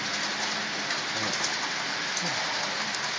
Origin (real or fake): real